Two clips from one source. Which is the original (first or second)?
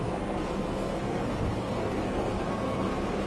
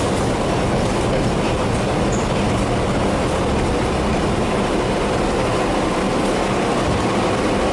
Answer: second